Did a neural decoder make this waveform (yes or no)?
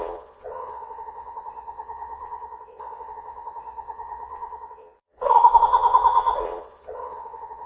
yes